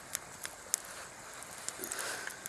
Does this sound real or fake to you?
real